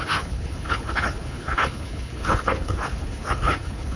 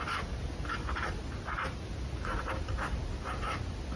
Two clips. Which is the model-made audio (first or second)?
first